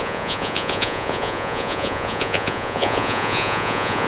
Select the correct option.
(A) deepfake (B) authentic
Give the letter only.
A